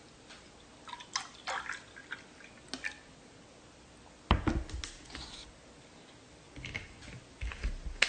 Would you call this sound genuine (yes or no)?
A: yes